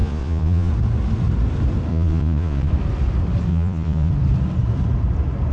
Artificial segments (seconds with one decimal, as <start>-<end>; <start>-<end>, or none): 0.0-0.7; 1.9-2.7; 3.5-4.1